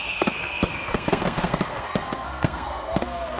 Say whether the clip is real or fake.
fake